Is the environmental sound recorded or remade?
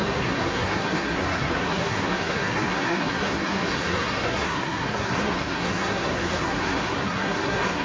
remade